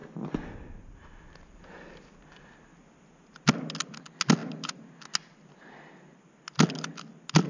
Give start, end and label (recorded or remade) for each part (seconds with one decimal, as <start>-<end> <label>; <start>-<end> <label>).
0.0-7.5 recorded